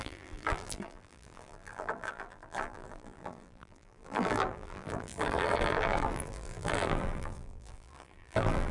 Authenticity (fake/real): fake